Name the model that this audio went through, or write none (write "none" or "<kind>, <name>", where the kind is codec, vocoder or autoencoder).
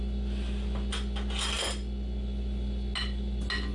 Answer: none